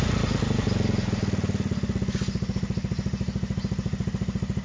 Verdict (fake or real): real